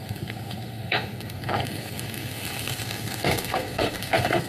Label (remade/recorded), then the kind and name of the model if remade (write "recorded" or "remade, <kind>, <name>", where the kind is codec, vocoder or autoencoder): remade, codec, SNAC